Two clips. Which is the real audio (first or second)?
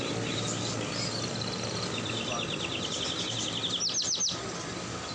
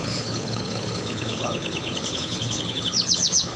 first